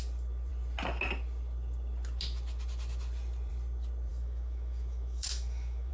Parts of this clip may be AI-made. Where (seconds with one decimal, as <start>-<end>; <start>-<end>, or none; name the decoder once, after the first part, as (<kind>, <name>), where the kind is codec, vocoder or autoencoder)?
4.1-5.9 (autoencoder, DAC-VAE)

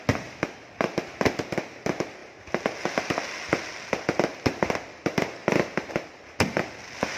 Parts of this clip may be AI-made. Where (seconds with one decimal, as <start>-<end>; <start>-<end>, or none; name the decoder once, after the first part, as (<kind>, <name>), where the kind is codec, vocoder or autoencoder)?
none

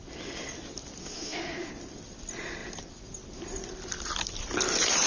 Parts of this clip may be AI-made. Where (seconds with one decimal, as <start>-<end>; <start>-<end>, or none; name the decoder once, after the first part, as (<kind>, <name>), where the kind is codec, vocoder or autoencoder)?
1.0-1.7 (autoencoder, DAC-VAE)

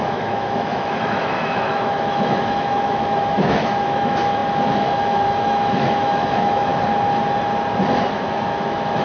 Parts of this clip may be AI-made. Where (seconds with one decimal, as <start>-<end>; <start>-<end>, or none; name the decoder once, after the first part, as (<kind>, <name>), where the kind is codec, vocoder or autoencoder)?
0.0-6.7 (autoencoder, DAC-VAE); 8.1-9.0